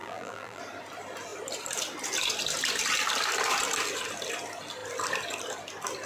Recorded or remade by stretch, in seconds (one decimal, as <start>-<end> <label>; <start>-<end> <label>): 0.0-0.6 remade; 0.6-6.1 recorded